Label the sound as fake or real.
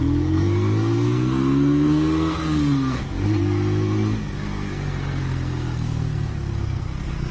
fake